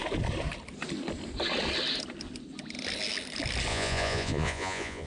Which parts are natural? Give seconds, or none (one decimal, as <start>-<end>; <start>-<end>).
0.0-3.7